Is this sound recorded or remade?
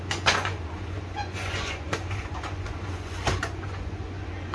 remade